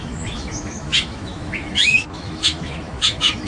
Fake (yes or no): yes